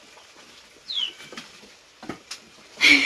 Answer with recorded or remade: recorded